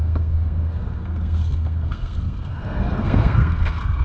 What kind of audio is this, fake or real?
fake